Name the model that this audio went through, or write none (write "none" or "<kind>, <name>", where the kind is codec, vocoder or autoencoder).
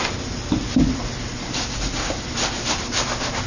none